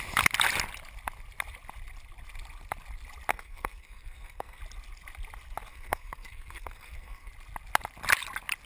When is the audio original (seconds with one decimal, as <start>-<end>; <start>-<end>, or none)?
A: 0.0-3.3; 4.6-5.7; 7.3-8.7